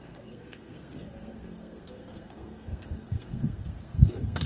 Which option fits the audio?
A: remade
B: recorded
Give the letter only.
A